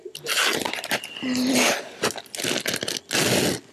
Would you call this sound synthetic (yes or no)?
no